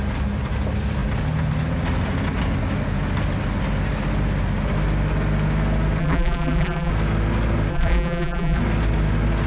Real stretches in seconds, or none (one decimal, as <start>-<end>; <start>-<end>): 0.0-6.0; 6.9-7.7; 8.6-9.5